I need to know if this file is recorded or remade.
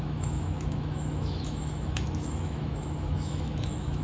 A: remade